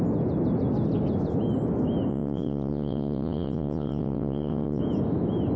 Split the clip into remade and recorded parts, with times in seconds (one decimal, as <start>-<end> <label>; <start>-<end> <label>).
0.0-2.1 recorded; 2.1-4.8 remade; 4.8-5.6 recorded